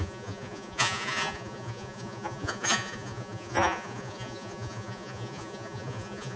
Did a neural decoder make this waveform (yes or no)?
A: yes